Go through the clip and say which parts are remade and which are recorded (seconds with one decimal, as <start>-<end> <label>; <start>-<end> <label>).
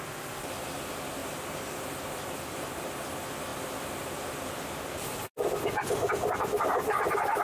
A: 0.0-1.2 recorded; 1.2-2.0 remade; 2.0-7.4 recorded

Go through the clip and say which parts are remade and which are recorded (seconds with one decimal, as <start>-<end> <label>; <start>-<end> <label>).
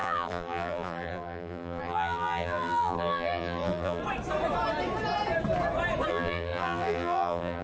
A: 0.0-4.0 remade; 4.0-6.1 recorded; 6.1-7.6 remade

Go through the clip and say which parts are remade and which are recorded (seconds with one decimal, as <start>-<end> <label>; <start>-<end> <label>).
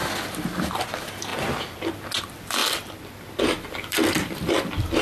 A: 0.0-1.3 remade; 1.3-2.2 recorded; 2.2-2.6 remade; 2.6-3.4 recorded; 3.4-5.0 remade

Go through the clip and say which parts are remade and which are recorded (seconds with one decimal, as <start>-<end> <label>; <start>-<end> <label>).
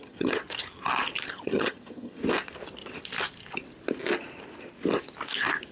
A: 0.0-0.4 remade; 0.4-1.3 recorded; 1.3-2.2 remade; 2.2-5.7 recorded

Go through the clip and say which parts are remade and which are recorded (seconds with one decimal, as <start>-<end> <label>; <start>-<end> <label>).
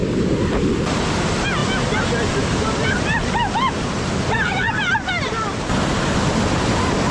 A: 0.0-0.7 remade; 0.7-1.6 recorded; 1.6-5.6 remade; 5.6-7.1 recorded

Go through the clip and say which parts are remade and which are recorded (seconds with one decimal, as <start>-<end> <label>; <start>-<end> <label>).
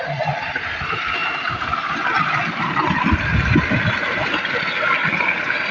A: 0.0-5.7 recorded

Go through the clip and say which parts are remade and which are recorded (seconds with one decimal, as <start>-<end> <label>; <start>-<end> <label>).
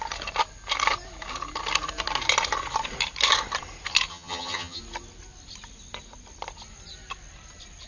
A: 0.0-4.1 recorded; 4.1-4.8 remade; 4.8-7.9 recorded